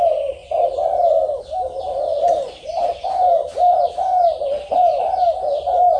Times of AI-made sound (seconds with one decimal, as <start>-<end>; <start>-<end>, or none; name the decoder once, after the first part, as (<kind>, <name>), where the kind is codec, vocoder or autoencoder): none